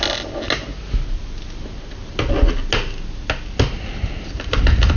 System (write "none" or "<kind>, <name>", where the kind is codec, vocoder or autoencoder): none